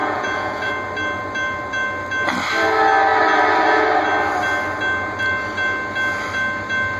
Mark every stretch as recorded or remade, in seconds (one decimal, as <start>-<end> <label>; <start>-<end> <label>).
0.0-0.7 remade; 0.7-7.0 recorded